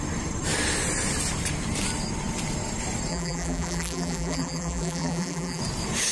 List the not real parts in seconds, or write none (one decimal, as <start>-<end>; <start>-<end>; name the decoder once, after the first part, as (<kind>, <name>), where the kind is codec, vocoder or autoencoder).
3.1-5.6 (vocoder, BigVGAN v2)